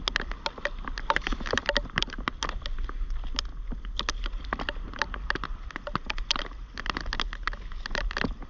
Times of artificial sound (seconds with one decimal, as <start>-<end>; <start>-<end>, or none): none